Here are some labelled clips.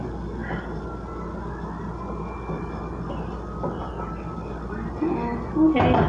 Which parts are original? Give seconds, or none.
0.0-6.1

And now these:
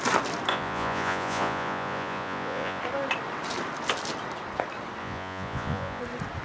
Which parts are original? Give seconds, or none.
0.0-0.5; 2.8-5.0; 6.0-6.4

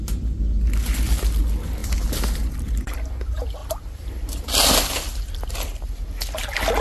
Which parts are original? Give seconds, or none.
0.0-6.8

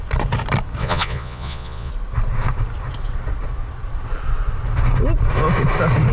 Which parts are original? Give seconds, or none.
0.0-0.8; 1.9-6.1